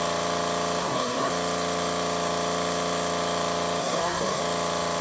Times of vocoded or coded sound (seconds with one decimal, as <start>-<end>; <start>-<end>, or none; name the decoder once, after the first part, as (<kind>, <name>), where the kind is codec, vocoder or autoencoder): 0.8-1.3 (codec, SNAC); 3.8-4.4

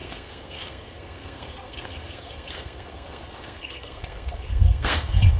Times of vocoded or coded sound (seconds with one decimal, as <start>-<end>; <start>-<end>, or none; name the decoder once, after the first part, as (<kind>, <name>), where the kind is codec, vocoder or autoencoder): 0.0-5.4 (codec, SNAC)

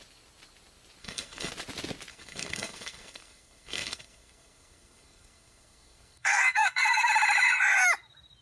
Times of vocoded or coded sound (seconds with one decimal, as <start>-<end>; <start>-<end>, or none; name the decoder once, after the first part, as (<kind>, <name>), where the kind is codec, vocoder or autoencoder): 1.0-1.5 (codec, SNAC); 2.1-7.1

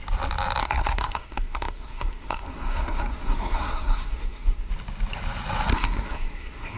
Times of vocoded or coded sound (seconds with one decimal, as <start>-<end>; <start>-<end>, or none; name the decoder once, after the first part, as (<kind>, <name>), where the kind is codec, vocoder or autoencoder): 0.6-4.7 (codec, SNAC); 5.7-6.8

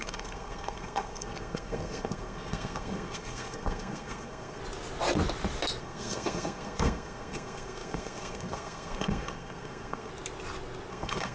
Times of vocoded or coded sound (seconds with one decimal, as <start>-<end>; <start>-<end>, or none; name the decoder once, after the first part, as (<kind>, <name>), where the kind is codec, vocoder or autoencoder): 0.0-4.6 (codec, SNAC); 5.8-10.1; 10.9-11.3

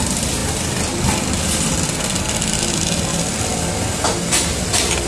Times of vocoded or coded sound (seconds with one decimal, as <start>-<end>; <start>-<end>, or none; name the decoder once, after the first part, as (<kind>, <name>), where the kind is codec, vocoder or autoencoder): none